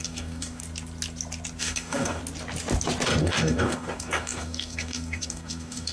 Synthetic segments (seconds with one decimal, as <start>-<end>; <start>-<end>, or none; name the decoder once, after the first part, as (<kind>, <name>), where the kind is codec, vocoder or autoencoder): 0.0-0.6 (codec, DAC); 1.6-2.2; 3.2-5.9